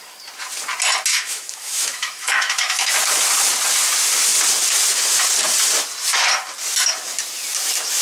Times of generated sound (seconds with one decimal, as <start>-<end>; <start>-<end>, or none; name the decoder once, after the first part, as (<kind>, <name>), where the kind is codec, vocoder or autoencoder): 1.1-2.9 (autoencoder, DAC-VAE)